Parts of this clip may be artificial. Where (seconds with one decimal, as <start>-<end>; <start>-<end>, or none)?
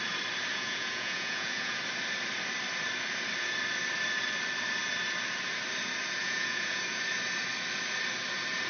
0.5-1.8; 6.2-6.8